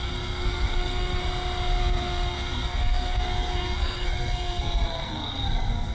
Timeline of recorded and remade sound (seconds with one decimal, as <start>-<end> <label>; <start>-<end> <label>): 0.0-1.2 remade; 1.2-1.8 recorded; 1.8-5.9 remade